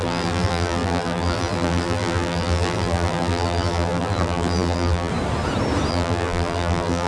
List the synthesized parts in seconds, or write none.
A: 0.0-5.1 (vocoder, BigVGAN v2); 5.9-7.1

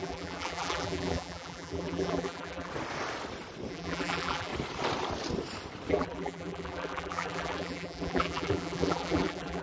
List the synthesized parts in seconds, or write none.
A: 0.0-2.7 (vocoder, BigVGAN v2); 3.7-4.5; 5.9-9.6

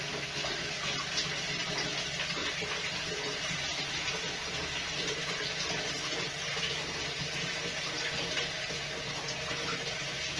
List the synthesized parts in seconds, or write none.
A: none